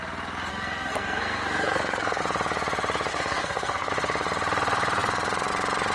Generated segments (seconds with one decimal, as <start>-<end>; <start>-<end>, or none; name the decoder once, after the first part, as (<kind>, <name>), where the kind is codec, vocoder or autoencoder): 0.5-2.2 (codec, SNAC); 3.1-3.9